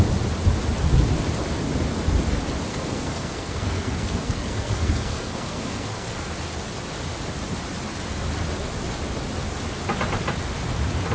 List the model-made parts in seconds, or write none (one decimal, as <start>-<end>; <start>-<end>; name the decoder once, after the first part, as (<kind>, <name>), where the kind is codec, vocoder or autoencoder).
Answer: 2.7-6.3 (codec, SNAC)